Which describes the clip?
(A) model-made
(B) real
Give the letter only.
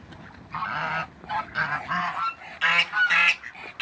B